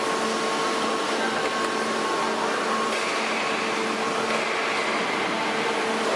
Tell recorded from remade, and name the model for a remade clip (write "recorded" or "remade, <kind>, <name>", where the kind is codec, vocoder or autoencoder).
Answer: recorded